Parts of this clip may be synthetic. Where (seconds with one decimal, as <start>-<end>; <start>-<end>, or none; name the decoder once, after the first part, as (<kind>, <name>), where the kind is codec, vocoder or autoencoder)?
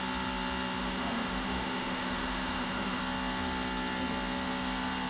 0.8-3.0 (autoencoder, DAC-VAE)